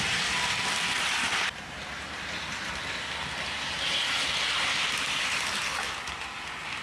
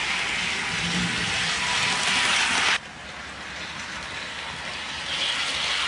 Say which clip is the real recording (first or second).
second